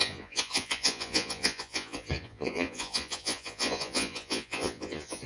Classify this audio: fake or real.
fake